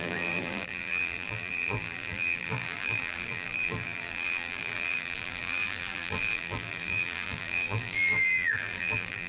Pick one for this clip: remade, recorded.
remade